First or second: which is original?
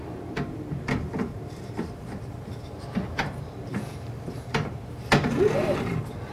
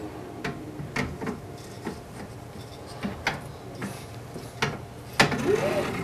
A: second